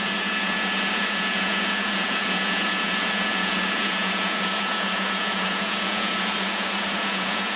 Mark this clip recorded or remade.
remade